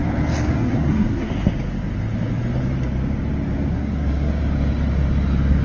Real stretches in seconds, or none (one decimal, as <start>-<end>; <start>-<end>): 0.0-0.5; 1.3-3.7; 4.3-5.6